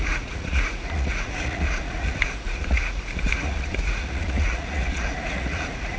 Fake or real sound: fake